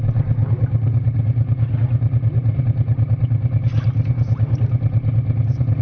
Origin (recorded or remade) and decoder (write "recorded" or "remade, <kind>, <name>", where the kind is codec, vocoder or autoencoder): recorded